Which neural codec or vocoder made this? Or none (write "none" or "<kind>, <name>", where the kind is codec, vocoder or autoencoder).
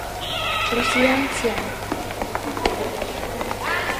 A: none